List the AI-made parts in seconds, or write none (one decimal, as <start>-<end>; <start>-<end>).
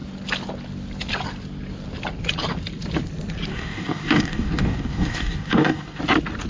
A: 3.5-6.0